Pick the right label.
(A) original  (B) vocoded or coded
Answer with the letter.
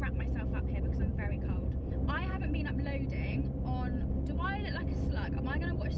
A